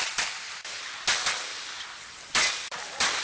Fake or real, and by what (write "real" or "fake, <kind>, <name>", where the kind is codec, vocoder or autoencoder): real